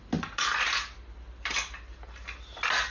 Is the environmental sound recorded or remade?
recorded